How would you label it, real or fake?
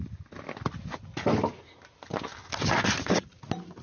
real